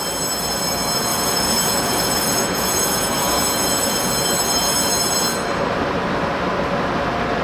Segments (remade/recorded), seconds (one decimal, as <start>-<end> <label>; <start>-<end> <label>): 0.0-1.1 recorded; 1.1-4.1 remade; 4.1-7.4 recorded